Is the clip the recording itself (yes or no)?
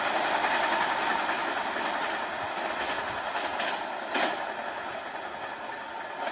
yes